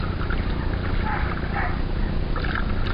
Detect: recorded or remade recorded